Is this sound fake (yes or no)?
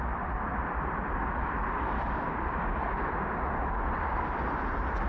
no